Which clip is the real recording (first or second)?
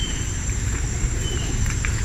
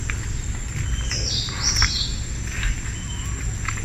second